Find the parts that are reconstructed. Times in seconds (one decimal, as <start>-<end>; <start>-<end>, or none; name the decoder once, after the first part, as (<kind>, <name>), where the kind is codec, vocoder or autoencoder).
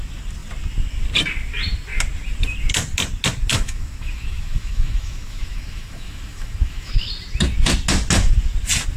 3.5-6.9 (autoencoder, DAC-VAE)